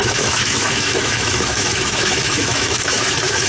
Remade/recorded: remade